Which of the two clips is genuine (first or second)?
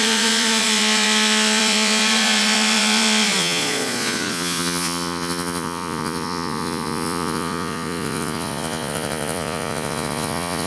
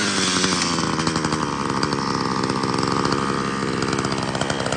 second